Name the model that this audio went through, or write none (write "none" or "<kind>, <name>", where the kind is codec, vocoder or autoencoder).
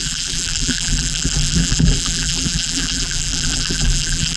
vocoder, BigVGAN v2